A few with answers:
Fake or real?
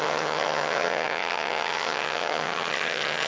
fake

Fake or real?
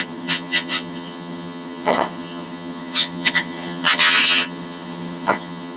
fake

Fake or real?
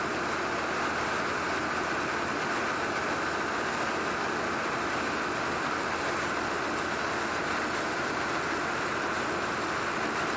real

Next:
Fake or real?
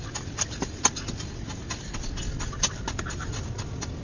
real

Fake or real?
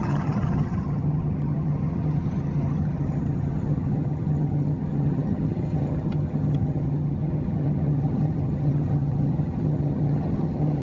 fake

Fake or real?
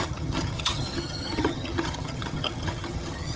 fake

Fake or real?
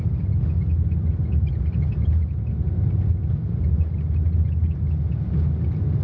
real